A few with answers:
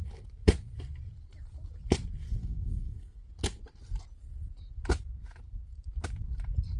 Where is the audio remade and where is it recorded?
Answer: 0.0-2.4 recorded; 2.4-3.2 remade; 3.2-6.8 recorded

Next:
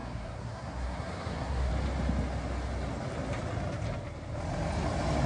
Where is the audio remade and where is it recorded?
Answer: 0.0-1.7 remade; 1.7-5.3 recorded

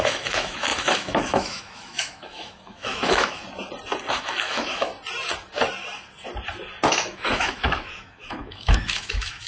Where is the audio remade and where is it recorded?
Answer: 0.0-3.4 remade; 3.4-4.1 recorded; 4.1-4.9 remade; 4.9-6.9 recorded; 6.9-9.5 remade

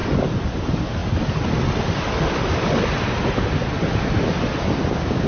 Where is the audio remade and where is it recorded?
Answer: 0.0-0.6 remade; 0.6-5.3 recorded

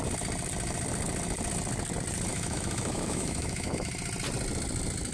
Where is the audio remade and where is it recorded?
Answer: 0.0-2.3 recorded; 2.3-3.9 remade; 3.9-5.1 recorded